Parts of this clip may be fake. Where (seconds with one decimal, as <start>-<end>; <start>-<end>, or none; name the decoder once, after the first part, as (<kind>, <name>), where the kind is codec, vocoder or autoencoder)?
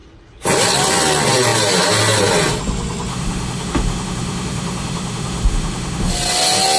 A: 3.1-6.1 (autoencoder, DAC-VAE)